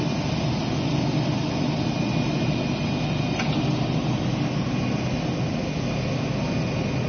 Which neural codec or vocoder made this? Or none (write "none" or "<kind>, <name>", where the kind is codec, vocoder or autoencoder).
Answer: none